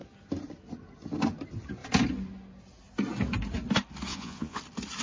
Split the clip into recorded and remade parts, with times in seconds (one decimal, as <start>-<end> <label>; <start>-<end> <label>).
0.0-4.1 recorded; 4.1-4.6 remade; 4.6-5.0 recorded